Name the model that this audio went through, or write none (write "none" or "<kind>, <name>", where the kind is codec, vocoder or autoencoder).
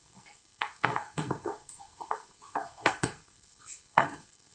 codec, SNAC